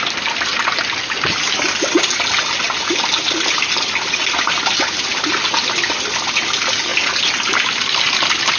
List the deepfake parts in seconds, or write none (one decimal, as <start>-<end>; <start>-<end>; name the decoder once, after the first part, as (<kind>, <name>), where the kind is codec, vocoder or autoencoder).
none